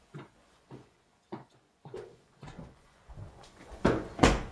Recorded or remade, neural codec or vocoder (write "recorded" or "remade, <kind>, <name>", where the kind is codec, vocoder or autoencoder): remade, vocoder, Vocos